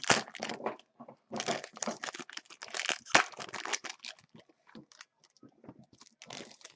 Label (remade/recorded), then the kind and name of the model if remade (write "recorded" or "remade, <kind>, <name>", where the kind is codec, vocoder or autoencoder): recorded